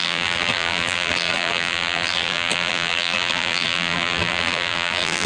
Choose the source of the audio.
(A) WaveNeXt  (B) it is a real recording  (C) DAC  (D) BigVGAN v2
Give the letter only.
D